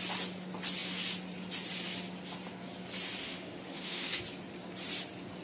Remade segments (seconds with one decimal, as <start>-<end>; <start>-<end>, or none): 3.2-4.1